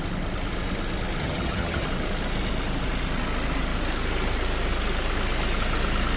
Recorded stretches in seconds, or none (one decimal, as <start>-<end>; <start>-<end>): 0.0-1.2; 1.9-6.2